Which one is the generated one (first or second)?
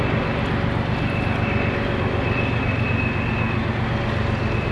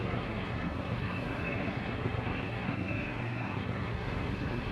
second